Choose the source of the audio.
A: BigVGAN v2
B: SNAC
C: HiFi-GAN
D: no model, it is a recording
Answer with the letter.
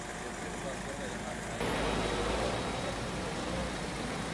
D